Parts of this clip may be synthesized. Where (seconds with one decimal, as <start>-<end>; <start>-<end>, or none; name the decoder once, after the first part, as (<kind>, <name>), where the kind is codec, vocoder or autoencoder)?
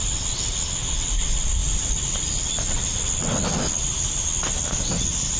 none